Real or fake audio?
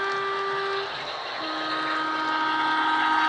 real